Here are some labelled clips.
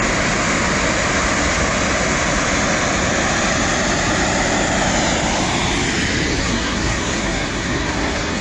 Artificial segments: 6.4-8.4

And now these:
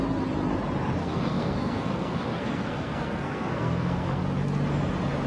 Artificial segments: 1.0-4.2

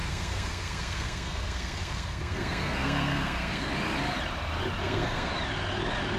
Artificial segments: 0.0-3.7; 4.8-5.3

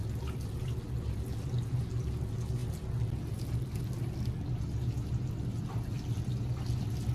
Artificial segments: none

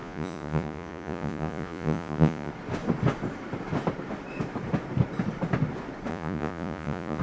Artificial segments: 0.0-2.5; 6.1-7.2

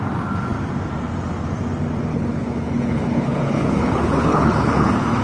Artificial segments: 2.1-5.2

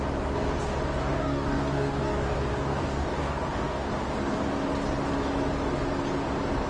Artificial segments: 1.0-3.9